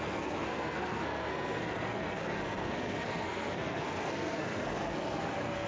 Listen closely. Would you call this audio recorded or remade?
remade